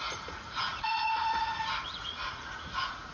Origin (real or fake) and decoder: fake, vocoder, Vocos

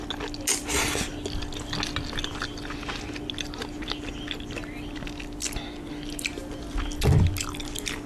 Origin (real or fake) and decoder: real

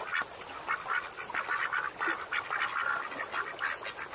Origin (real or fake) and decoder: real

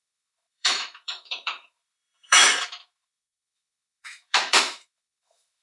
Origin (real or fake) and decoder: fake, autoencoder, DAC-VAE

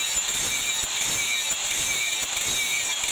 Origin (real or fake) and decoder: real